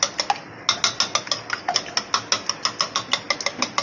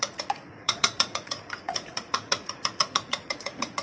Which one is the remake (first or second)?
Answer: second